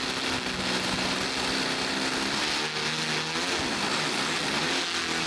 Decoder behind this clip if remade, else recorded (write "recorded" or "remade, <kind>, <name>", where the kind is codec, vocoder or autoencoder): recorded